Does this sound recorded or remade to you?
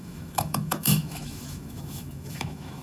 remade